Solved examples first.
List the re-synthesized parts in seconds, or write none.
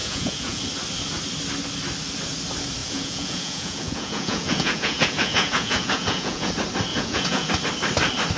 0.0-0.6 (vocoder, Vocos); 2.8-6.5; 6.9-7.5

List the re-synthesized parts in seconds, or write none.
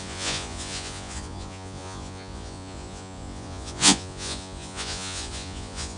0.0-6.0 (vocoder, Vocos)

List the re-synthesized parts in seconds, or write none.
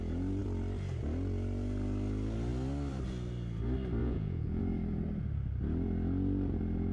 4.0-4.6 (vocoder, Vocos)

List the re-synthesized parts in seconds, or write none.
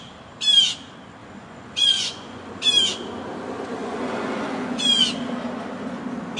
1.2-2.5 (vocoder, Vocos); 3.8-4.8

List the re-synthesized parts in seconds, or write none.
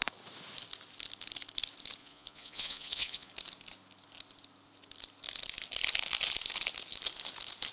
2.0-3.3 (vocoder, Vocos)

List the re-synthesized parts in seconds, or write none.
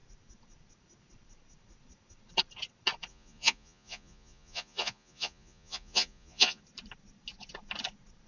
3.1-6.6 (vocoder, Vocos)